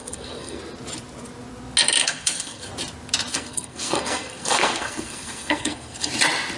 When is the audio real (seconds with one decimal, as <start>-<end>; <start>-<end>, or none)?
0.6-2.0; 2.7-3.3; 6.1-6.6

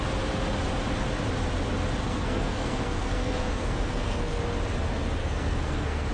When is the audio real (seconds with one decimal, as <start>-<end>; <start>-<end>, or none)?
0.0-2.0; 4.4-5.2

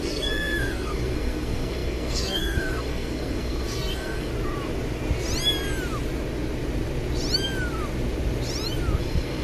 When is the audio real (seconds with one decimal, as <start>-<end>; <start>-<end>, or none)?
4.3-9.0